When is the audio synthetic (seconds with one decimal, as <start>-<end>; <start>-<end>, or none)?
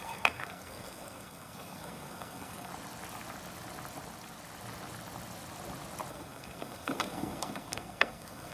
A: 0.0-2.7; 6.1-8.5